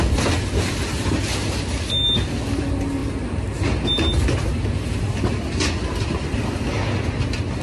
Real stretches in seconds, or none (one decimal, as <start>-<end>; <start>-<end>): 0.0-7.6